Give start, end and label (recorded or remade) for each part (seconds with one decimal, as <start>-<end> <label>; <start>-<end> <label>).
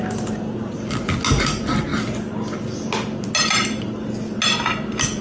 0.0-5.2 recorded